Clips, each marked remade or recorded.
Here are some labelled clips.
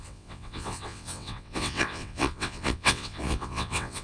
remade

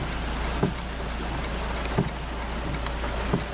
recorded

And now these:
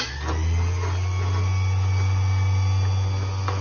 recorded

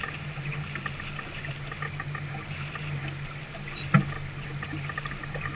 recorded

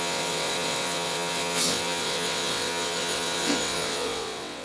remade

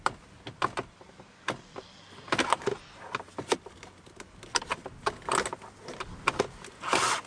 recorded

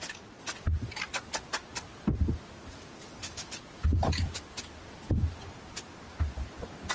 recorded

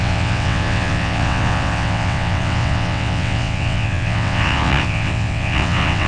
remade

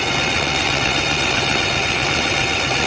remade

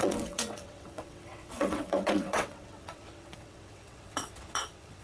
remade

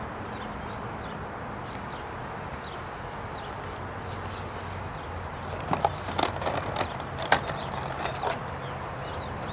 recorded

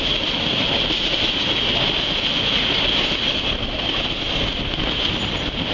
recorded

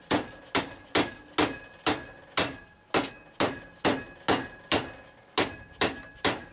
recorded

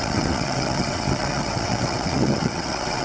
remade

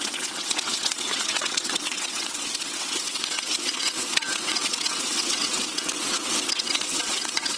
remade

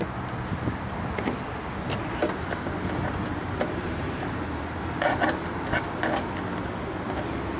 recorded